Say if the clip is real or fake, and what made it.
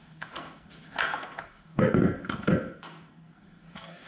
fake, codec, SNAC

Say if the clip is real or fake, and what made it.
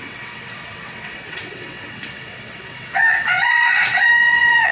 fake, vocoder, WaveNeXt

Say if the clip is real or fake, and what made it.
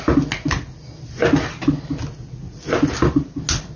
real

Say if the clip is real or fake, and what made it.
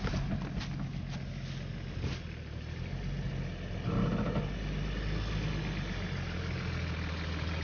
real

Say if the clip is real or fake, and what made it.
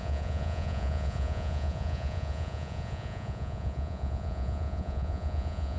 fake, vocoder, Vocos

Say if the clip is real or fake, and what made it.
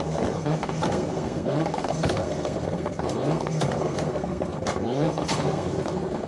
fake, codec, SNAC